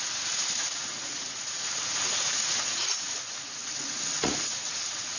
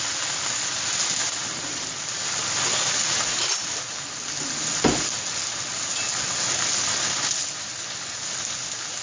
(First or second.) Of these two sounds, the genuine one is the second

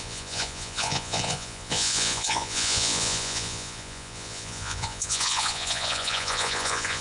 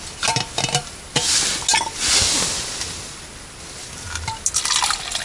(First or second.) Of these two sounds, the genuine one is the second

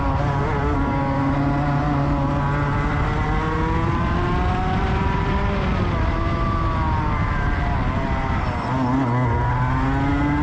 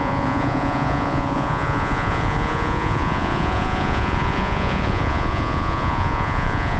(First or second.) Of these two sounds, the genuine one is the first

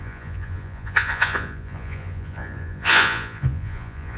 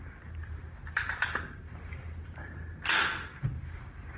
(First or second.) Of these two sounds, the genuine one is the second